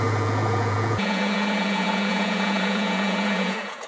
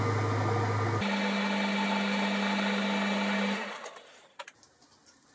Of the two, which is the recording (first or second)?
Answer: second